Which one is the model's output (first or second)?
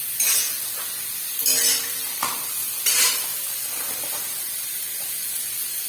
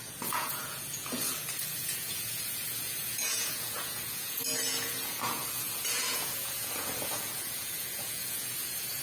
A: second